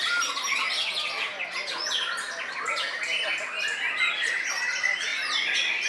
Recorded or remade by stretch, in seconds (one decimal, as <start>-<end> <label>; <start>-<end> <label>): 0.0-5.9 recorded